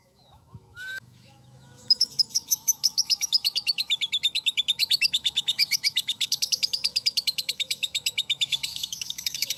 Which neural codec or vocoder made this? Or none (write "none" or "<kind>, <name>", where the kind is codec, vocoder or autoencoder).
autoencoder, DAC-VAE